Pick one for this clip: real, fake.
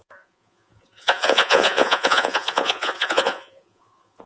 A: fake